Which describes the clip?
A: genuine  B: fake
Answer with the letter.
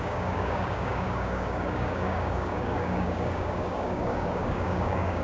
B